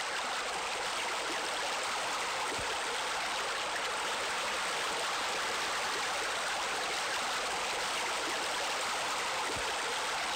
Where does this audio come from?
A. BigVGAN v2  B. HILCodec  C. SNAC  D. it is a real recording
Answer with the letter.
D